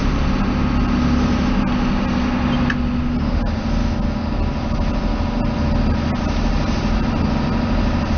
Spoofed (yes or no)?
no